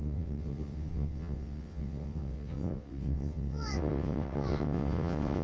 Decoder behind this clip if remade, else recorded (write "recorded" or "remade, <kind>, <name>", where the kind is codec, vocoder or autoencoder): remade, vocoder, WaveNeXt